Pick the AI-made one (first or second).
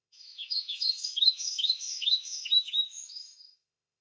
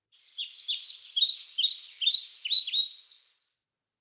first